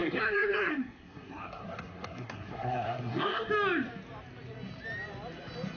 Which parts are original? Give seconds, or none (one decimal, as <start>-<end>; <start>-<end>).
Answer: 3.5-5.8